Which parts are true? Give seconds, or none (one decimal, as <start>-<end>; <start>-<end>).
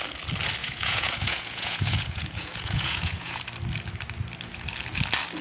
0.0-0.6; 3.4-5.4